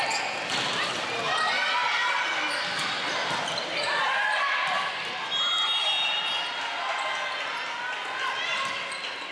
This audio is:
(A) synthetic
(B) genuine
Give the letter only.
B